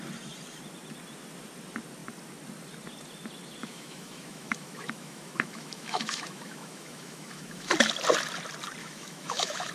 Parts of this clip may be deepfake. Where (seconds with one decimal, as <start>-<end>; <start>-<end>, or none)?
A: 3.6-7.7; 8.8-9.7